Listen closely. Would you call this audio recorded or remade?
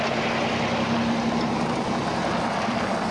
recorded